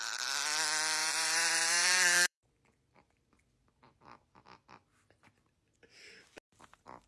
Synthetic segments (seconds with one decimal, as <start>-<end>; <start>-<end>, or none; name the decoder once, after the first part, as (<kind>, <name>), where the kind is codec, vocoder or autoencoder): 1.0-2.5 (vocoder, BigVGAN v2)